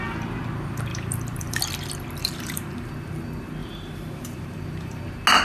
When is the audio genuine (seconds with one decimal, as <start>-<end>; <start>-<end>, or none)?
0.0-0.9; 1.6-2.2; 2.9-3.6; 5.0-5.4